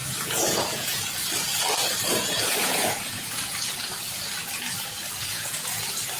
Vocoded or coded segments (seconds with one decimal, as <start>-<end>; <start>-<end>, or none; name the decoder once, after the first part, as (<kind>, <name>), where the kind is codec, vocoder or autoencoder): 0.0-1.0 (vocoder, Vocos); 2.1-3.7; 5.2-5.8